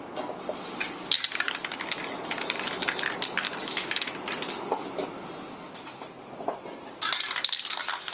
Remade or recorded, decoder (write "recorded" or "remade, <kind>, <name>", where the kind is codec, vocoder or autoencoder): recorded